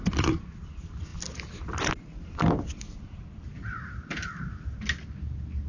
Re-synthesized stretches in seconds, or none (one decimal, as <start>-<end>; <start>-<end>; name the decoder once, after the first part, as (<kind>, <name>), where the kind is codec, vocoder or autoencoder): none